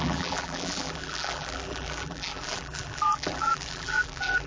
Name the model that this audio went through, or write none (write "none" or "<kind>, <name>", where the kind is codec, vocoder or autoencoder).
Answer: vocoder, BigVGAN v2